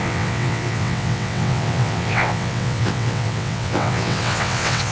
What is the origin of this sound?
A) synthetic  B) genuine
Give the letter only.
A